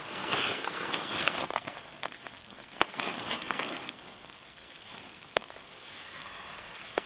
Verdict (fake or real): fake